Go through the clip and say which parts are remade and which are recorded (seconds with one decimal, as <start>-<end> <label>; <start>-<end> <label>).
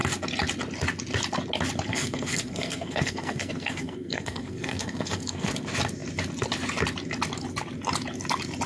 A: 0.0-1.9 recorded; 1.9-5.5 remade; 5.5-8.7 recorded